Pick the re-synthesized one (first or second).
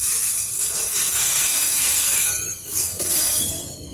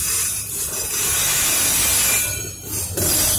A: first